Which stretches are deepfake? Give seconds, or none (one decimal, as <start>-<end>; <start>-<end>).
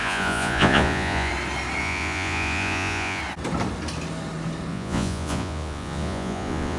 0.0-1.3; 1.8-3.2; 4.7-6.8